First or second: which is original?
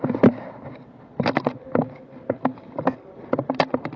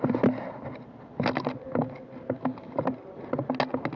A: second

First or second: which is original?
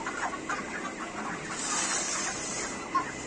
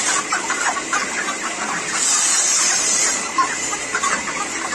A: first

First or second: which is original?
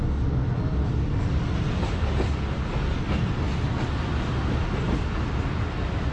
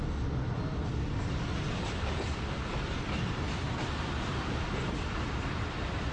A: first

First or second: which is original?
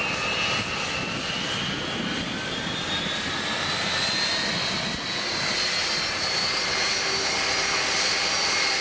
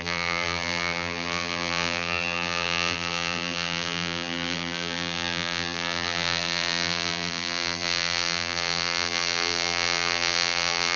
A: first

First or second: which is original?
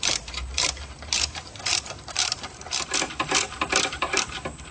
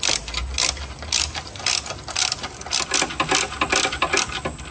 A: second